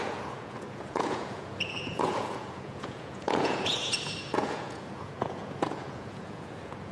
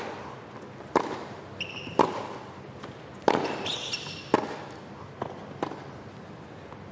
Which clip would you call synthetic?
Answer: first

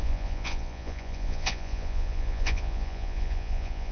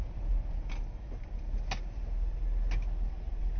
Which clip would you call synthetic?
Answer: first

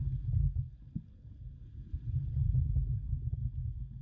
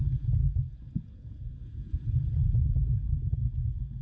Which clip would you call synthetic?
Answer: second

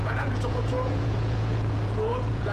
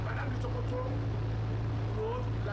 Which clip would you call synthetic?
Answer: first